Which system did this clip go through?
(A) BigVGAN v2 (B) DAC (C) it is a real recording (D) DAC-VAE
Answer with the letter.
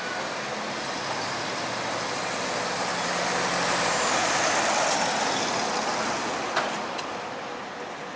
C